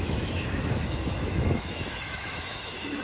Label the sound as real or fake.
fake